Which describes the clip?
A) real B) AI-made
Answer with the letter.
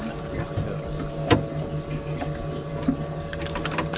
A